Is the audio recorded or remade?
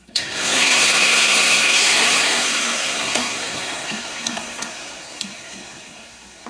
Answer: remade